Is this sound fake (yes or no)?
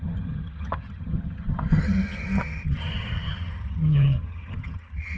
yes